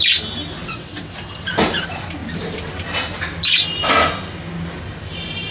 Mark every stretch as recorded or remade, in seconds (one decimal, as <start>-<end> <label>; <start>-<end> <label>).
0.0-0.6 recorded; 0.6-1.5 remade; 1.5-5.5 recorded